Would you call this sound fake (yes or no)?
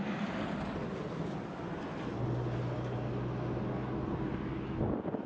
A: no